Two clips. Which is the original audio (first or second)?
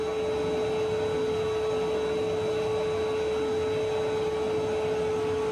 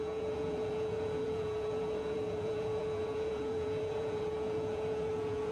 first